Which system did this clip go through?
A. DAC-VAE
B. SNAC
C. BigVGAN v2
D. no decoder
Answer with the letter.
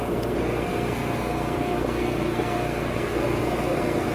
B